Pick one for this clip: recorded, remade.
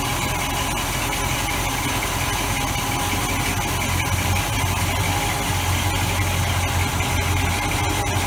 recorded